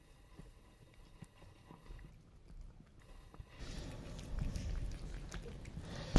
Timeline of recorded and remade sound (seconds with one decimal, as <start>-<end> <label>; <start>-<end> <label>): 0.0-2.1 remade; 2.1-3.0 recorded; 3.0-3.6 remade; 3.6-6.2 recorded